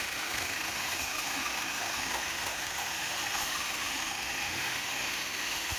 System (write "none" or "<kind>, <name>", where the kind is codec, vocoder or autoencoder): autoencoder, DAC-VAE